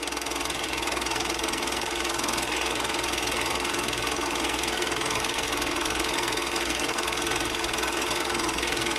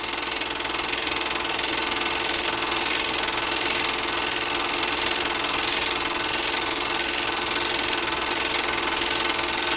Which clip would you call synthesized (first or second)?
first